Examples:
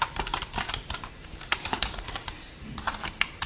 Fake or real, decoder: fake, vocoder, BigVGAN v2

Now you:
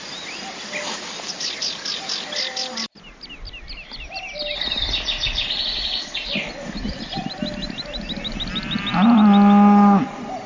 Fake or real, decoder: real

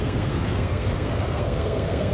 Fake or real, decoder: fake, codec, SNAC